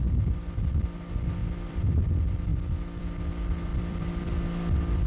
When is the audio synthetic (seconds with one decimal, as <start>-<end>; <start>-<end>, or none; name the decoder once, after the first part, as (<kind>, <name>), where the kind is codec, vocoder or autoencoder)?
1.4-2.0 (vocoder, BigVGAN v2); 3.7-4.2